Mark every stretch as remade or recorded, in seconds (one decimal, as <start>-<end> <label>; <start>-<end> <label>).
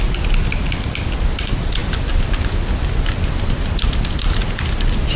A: 0.0-5.2 recorded